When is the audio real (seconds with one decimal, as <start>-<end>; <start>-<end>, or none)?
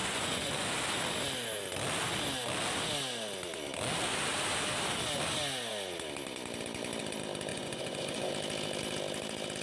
0.7-7.5; 8.3-9.6